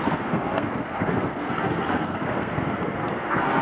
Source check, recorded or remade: remade